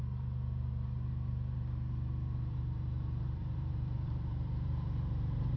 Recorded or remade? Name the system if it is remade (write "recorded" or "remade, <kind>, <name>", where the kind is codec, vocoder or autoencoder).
remade, vocoder, BigVGAN v2